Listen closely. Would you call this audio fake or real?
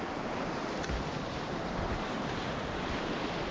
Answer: real